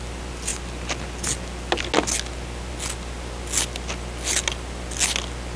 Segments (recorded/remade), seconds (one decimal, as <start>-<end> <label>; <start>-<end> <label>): 0.0-5.6 recorded